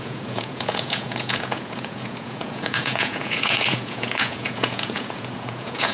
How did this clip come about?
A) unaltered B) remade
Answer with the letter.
B